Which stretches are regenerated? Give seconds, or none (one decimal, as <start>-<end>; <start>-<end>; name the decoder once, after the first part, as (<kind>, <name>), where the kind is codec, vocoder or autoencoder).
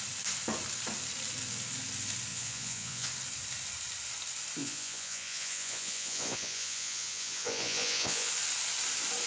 2.3-3.1 (vocoder, Vocos); 4.6-8.3